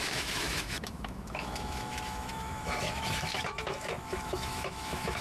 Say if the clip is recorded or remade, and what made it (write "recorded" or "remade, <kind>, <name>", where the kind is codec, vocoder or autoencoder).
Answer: remade, autoencoder, DAC-VAE